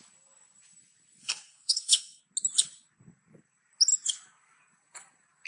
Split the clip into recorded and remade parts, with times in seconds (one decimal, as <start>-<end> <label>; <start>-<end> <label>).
0.0-1.2 recorded; 1.2-2.2 remade; 2.2-5.5 recorded